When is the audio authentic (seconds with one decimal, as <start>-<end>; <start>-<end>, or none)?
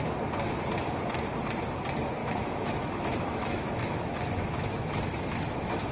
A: 0.0-2.2